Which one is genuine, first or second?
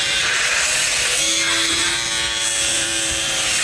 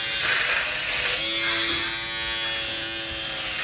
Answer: second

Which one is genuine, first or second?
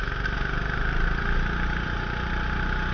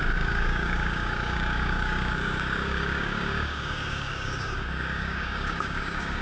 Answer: first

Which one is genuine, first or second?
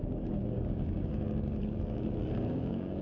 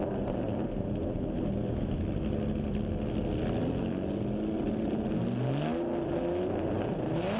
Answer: second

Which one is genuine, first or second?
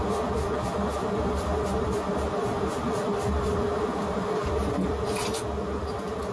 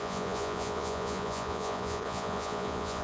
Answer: first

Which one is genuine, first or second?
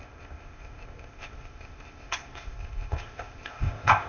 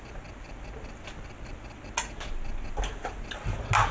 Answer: second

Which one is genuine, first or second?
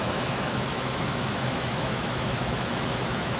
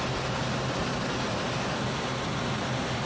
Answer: second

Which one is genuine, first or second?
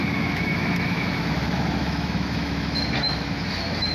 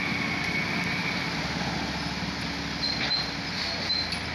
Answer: second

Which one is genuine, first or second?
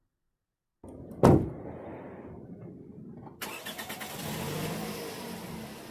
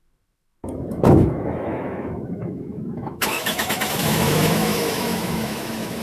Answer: first